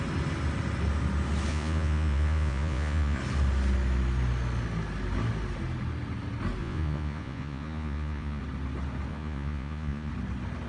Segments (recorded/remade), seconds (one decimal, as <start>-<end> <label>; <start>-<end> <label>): 0.0-1.5 recorded; 1.5-3.2 remade; 3.2-6.6 recorded; 6.6-8.4 remade; 8.4-9.1 recorded; 9.1-10.1 remade; 10.1-10.7 recorded